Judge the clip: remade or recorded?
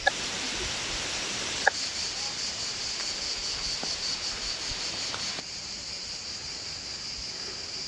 recorded